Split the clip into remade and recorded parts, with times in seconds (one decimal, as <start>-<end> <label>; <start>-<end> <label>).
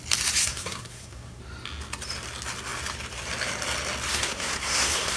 0.0-0.4 recorded; 0.4-1.4 remade; 1.4-4.1 recorded; 4.1-5.2 remade